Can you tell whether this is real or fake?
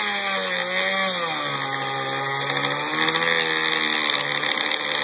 real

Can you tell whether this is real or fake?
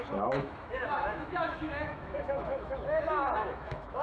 fake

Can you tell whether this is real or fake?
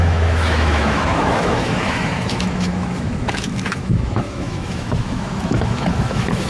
fake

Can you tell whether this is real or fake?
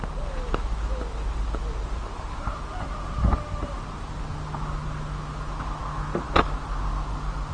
real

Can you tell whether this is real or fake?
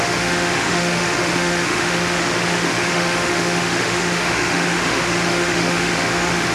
fake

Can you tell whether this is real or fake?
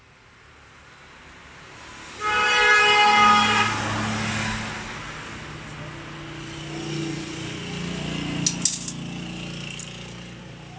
real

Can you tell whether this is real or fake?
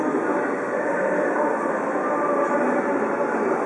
real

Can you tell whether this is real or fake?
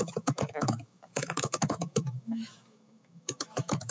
fake